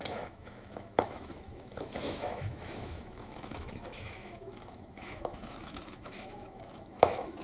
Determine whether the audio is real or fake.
fake